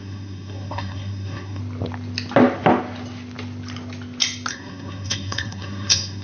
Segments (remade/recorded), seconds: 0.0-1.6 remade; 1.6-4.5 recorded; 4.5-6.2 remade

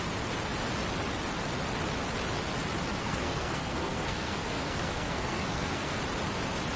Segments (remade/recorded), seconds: 0.0-3.0 recorded; 3.0-6.0 remade; 6.0-6.8 recorded

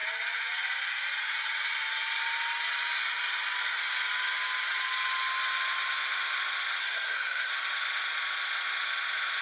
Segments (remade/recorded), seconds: 0.0-6.8 recorded; 6.8-7.5 remade; 7.5-9.4 recorded

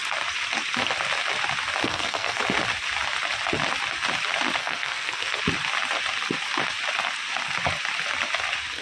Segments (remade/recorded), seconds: 0.0-1.8 recorded; 1.8-2.4 remade; 2.4-4.6 recorded; 4.6-5.4 remade; 5.4-8.8 recorded

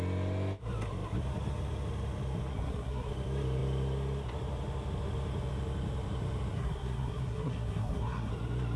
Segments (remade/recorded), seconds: 0.0-2.5 recorded; 2.5-3.1 remade; 3.1-6.5 recorded; 6.5-8.3 remade; 8.3-8.8 recorded